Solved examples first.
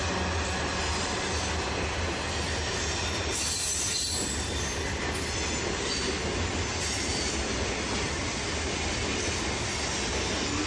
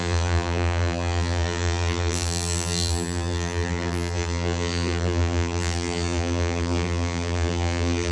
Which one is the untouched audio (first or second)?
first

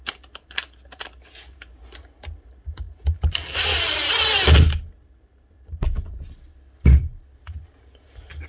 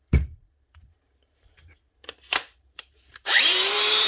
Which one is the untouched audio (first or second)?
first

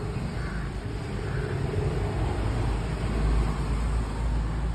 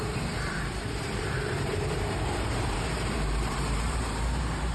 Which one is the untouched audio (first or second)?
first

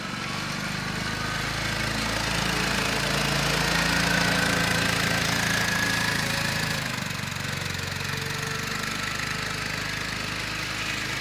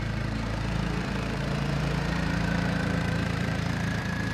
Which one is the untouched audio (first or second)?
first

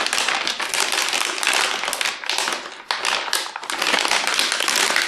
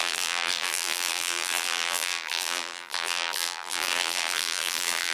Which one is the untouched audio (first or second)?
first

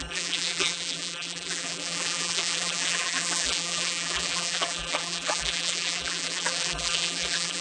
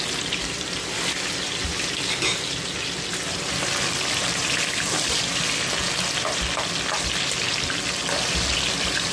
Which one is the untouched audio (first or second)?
second